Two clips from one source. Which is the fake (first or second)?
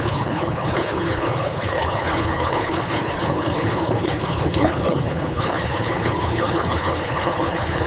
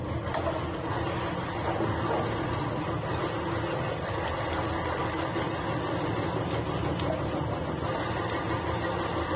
first